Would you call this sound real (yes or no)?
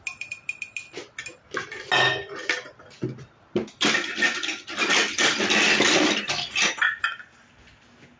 yes